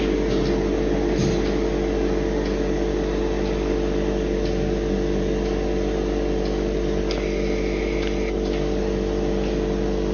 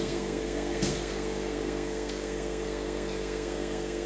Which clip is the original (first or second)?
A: first